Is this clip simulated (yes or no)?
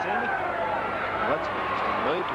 yes